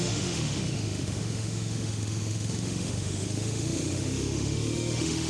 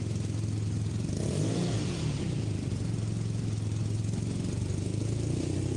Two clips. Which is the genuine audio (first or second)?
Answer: second